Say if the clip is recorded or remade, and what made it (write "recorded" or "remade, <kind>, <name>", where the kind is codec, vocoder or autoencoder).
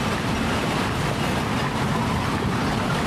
recorded